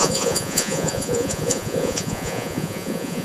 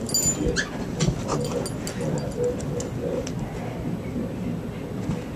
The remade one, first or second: first